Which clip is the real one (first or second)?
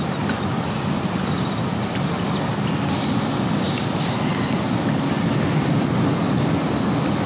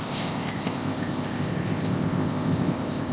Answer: first